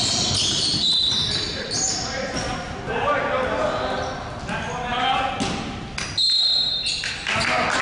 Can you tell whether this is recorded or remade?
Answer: recorded